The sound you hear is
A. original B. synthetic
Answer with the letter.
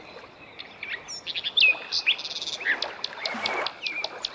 A